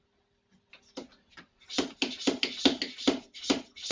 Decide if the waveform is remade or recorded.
recorded